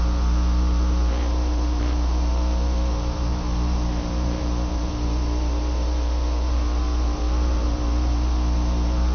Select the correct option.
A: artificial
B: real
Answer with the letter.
A